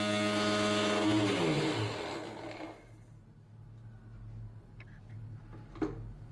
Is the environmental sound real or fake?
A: real